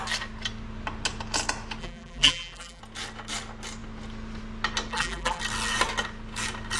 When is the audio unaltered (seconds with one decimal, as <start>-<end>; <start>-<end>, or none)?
0.0-1.8; 2.8-4.9; 5.4-6.8